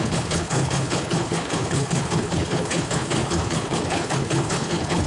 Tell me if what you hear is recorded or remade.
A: remade